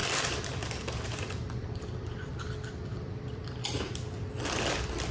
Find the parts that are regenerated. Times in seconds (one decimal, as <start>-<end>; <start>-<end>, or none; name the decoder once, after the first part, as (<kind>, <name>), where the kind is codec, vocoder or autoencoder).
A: 0.0-2.4 (vocoder, BigVGAN v2); 2.9-3.4